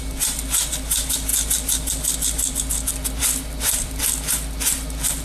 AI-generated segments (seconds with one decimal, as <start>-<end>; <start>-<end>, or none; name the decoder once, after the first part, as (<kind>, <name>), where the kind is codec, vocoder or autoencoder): 3.2-4.0 (vocoder, BigVGAN v2)